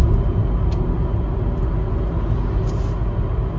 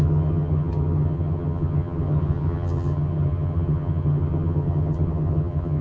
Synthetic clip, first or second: second